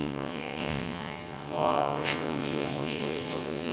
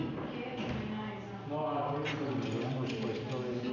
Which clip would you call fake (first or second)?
first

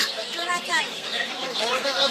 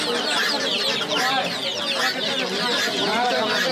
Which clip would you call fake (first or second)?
first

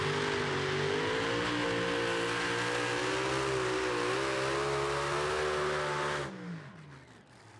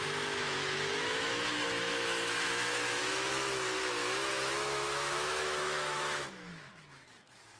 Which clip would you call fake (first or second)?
second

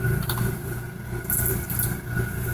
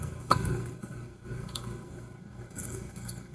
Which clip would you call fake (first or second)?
second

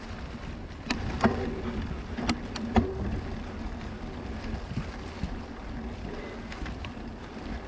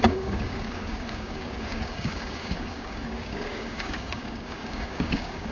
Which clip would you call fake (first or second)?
second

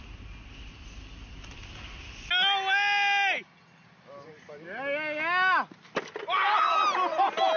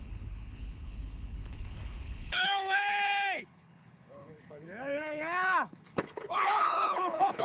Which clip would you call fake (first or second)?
second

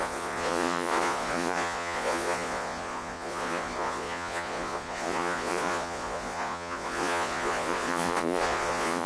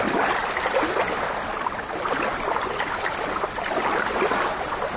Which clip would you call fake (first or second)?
first